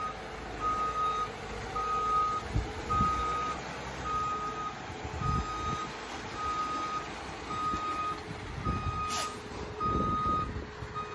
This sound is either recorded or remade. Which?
recorded